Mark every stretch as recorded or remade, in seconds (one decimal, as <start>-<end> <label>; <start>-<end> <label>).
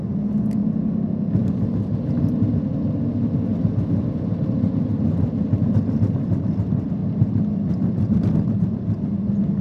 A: 0.0-9.6 recorded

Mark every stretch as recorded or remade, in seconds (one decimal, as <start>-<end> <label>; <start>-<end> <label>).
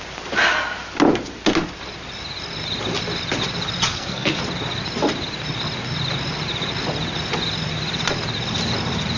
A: 0.0-3.9 recorded; 3.9-4.4 remade; 4.4-9.2 recorded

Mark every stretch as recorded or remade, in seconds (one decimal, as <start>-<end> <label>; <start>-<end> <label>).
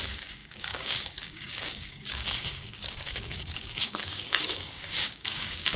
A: 0.0-5.8 remade